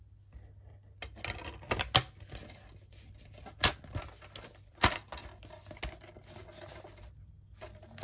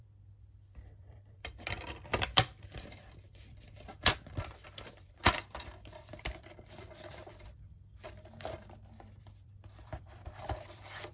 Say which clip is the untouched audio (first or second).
first